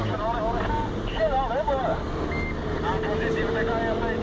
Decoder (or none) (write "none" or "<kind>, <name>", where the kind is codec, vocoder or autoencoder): none